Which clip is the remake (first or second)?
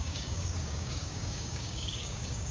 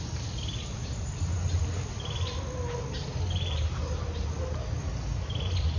first